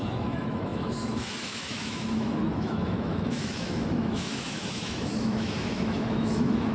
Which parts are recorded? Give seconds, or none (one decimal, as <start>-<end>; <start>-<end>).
none